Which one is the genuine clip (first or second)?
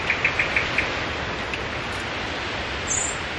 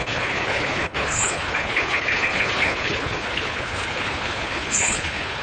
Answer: first